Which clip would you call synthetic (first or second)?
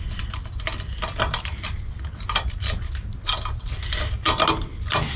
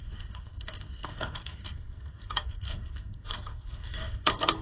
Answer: second